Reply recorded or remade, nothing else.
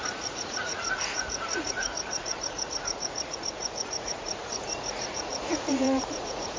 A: remade